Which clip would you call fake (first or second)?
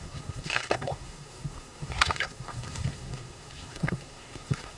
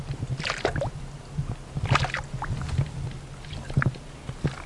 first